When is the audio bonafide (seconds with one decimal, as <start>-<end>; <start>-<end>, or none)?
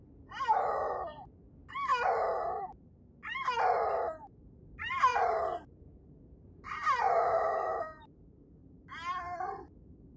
0.0-5.1; 5.8-6.4; 7.0-8.6; 9.6-10.2